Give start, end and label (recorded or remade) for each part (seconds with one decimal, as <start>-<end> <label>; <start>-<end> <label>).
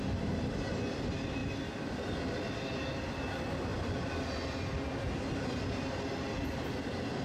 0.0-1.4 recorded; 1.4-1.9 remade; 1.9-3.7 recorded; 3.7-4.8 remade; 4.8-7.2 recorded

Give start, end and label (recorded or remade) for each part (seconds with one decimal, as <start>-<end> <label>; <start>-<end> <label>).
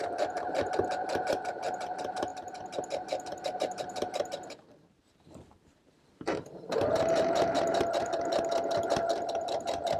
0.0-10.0 remade